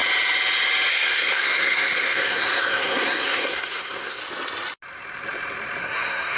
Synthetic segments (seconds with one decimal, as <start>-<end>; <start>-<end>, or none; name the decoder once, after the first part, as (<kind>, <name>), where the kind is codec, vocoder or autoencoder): 0.9-4.2 (codec, SNAC); 5.8-6.4

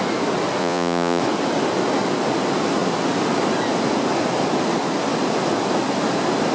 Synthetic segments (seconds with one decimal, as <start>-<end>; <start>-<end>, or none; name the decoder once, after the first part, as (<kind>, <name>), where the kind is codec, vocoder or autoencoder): 0.6-1.2 (vocoder, Vocos)

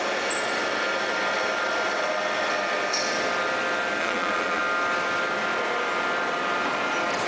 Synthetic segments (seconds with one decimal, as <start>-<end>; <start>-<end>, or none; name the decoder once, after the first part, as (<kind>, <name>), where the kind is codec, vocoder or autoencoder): 4.0-4.6 (vocoder, Vocos)